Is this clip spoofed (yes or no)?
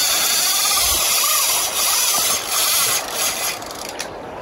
yes